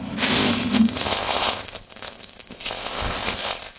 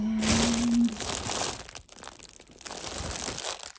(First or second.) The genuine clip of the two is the second